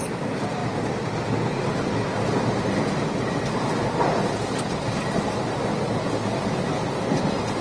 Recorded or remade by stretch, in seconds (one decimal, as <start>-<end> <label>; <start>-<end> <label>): 0.0-3.8 recorded; 3.8-5.8 remade; 5.8-7.6 recorded